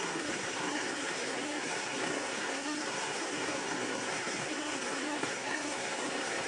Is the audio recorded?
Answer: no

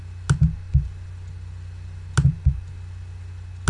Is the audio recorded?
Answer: yes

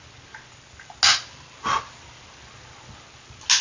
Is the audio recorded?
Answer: yes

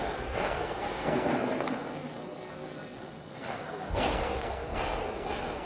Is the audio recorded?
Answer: no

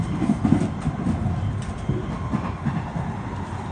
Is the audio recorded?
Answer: yes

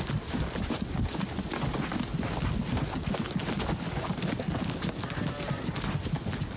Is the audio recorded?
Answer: yes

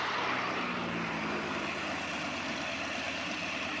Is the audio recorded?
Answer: yes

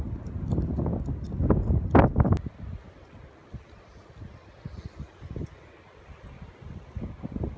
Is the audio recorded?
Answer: yes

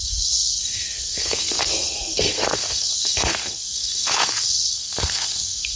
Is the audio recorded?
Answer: no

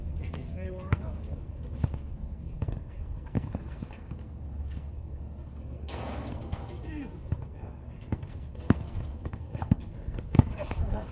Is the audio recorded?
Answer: no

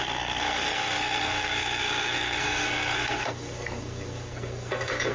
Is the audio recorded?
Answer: no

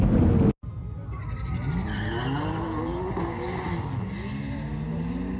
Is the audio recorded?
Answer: yes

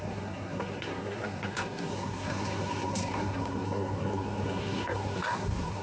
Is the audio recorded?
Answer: no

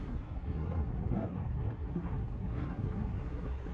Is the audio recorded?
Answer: no